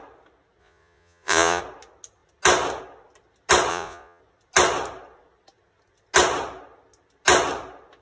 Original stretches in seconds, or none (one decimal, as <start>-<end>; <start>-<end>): 0.0-0.6; 1.6-3.7; 4.2-8.0